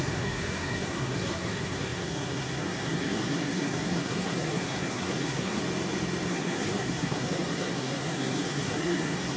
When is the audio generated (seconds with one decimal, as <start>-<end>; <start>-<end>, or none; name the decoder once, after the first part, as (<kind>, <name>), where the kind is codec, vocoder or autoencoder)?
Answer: 0.0-5.6 (codec, SNAC); 6.3-9.4